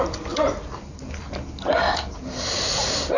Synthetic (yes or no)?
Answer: no